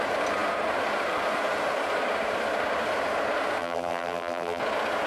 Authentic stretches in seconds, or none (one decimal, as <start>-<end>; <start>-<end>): 0.0-3.6; 4.6-5.1